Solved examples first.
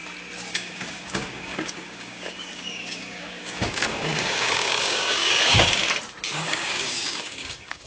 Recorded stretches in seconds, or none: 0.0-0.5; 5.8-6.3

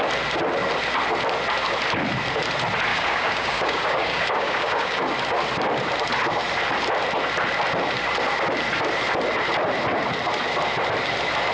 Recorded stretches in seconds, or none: 0.0-2.9; 5.0-11.5